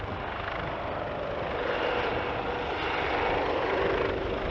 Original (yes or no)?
yes